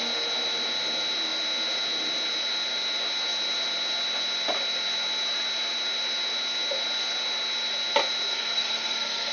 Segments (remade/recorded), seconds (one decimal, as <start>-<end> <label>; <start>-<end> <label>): 0.0-8.3 recorded; 8.3-9.3 remade